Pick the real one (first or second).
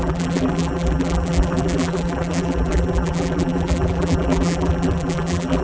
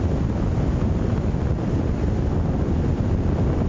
second